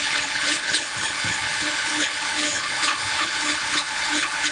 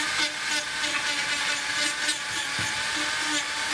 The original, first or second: second